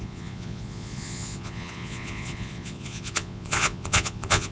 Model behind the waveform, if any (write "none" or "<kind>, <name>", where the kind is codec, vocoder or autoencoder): vocoder, Vocos